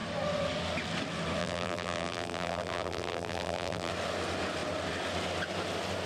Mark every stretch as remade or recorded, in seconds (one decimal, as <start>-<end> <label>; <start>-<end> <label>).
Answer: 0.0-1.4 recorded; 1.4-3.9 remade; 3.9-6.1 recorded